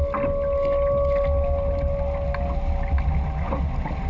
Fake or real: real